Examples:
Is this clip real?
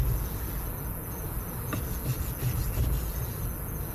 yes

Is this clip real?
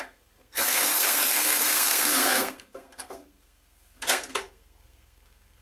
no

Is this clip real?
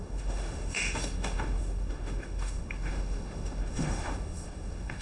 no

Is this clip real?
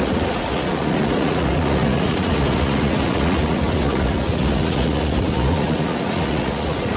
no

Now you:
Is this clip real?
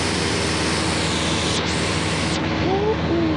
yes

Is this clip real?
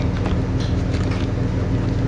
yes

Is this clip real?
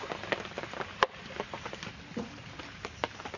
yes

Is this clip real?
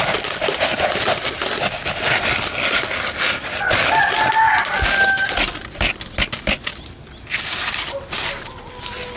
yes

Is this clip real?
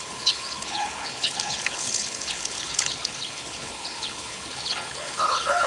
no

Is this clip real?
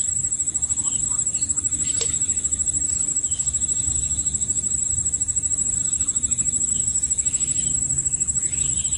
yes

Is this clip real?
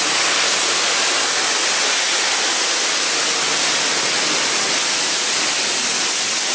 yes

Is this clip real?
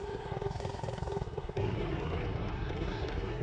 no